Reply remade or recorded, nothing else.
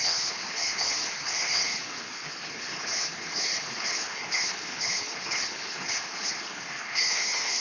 remade